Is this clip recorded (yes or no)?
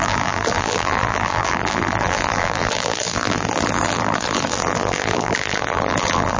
no